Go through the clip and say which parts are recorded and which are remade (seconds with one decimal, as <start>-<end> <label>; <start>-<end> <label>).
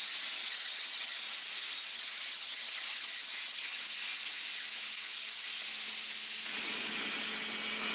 0.0-0.4 recorded; 0.4-1.2 remade; 1.2-1.9 recorded; 1.9-3.8 remade; 3.8-7.9 recorded